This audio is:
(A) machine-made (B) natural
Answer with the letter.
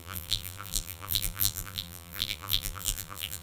A